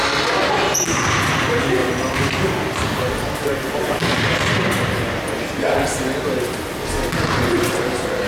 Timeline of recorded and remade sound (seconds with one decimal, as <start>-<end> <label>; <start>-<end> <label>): 0.0-1.8 recorded; 1.8-5.0 remade; 5.0-8.3 recorded